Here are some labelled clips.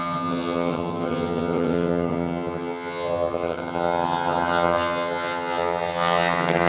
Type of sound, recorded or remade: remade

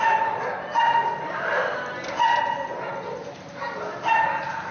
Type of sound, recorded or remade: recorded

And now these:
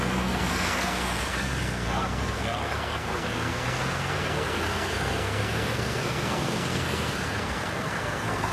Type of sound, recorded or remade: remade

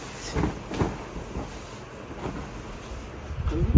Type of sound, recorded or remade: recorded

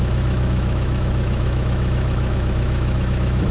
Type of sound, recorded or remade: remade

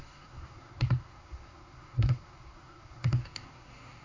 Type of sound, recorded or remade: remade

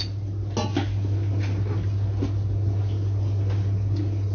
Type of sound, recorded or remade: recorded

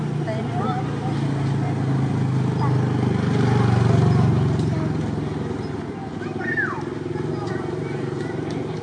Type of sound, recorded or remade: recorded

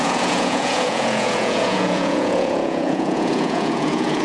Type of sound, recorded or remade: remade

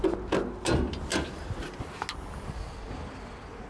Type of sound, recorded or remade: recorded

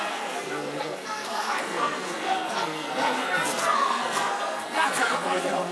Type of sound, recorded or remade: remade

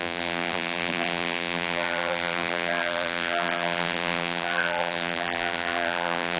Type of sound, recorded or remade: remade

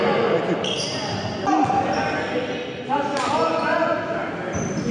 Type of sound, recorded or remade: recorded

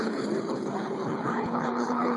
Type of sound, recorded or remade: remade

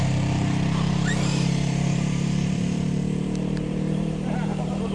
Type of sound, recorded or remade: remade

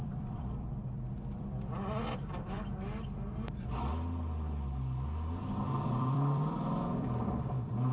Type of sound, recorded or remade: remade